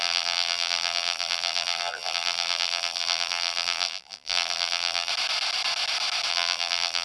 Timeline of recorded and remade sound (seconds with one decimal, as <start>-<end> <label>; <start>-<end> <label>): 0.0-5.1 remade; 5.1-6.3 recorded; 6.3-7.0 remade